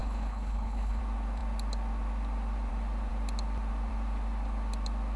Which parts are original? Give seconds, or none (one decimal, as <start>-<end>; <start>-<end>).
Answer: 1.0-5.2